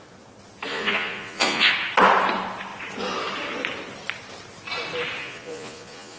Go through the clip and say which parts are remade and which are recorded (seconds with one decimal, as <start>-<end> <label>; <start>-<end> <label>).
0.0-0.7 recorded; 0.7-1.7 remade; 1.7-5.2 recorded; 5.2-6.2 remade